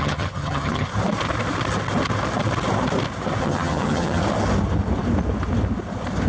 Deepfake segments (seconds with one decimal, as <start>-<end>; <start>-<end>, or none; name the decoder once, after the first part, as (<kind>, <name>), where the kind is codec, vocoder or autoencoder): 0.0-0.9 (vocoder, HiFi-GAN); 3.4-4.2